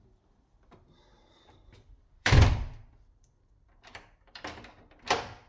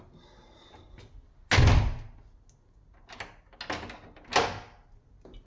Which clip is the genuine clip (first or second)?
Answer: second